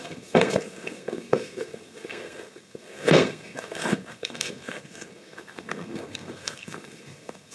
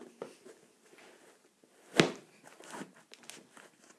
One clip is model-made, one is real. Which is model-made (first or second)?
first